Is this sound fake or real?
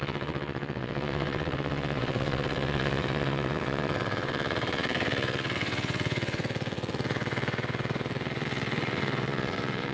fake